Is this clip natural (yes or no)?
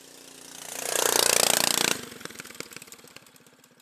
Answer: yes